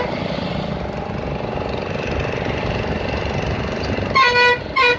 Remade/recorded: recorded